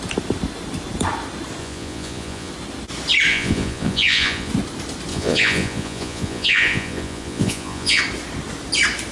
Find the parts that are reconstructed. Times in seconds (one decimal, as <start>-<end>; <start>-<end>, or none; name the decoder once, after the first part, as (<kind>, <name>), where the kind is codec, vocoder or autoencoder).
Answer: 1.6-2.5 (vocoder, Vocos); 3.3-4.5; 5.1-8.0